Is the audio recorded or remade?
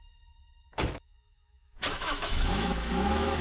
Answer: remade